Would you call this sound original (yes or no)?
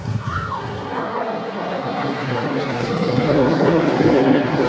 no